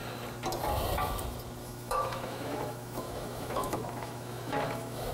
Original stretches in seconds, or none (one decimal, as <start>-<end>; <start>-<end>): 0.0-1.6